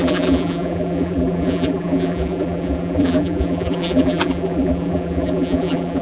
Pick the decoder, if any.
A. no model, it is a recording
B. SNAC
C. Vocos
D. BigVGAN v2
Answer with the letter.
D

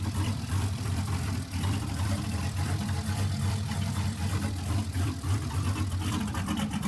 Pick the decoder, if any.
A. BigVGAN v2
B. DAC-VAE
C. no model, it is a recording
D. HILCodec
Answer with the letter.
A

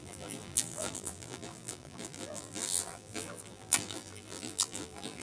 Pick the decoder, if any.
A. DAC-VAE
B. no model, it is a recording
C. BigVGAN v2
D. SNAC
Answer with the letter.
C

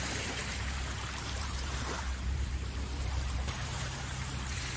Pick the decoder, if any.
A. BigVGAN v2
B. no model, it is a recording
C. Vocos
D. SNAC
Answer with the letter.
A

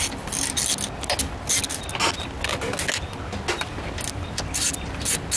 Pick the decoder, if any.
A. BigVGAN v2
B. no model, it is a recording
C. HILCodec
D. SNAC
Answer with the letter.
B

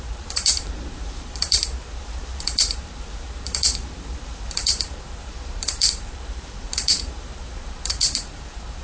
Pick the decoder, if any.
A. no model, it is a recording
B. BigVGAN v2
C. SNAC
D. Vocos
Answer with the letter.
B